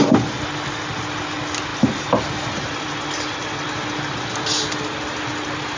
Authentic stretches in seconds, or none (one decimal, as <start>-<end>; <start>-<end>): 0.0-5.8